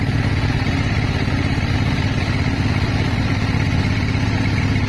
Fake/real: real